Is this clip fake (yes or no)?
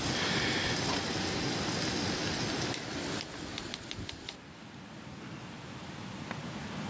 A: no